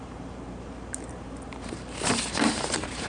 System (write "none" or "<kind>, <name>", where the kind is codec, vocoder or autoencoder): vocoder, BigVGAN v2